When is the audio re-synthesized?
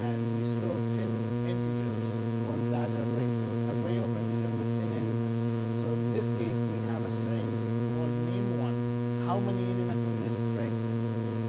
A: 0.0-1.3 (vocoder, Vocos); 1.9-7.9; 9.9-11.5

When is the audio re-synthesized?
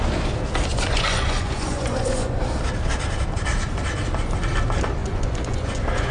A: 0.7-2.4 (vocoder, Vocos); 5.0-6.1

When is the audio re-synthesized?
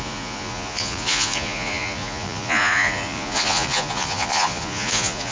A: 0.0-5.3 (vocoder, Vocos)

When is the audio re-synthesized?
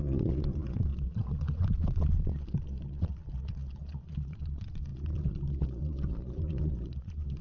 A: 0.0-7.4 (vocoder, Vocos)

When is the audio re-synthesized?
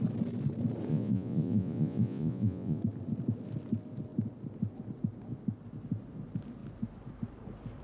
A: 0.9-2.8 (vocoder, Vocos)